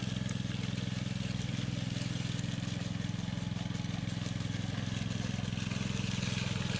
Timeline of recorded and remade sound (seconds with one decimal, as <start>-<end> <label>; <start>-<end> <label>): 0.0-6.8 recorded